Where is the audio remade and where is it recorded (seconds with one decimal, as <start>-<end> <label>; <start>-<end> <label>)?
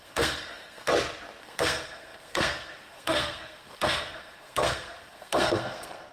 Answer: 0.0-0.9 remade; 0.9-1.4 recorded; 1.4-6.1 remade